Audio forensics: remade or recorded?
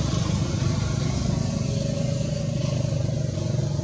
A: recorded